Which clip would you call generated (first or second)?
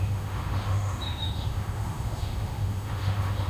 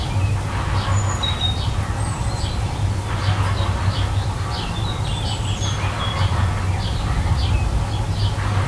first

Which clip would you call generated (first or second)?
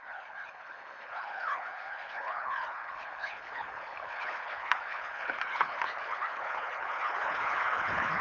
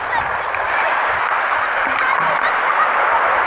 first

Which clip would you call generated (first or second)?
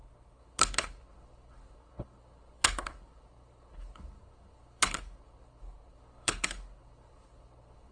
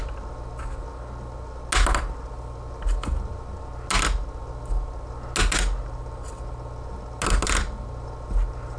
first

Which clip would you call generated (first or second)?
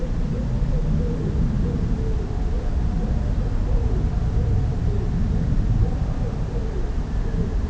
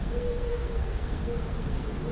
second